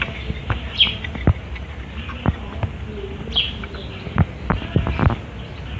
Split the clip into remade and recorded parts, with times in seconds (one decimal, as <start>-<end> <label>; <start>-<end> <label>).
0.0-0.4 recorded; 0.4-3.9 remade; 3.9-5.8 recorded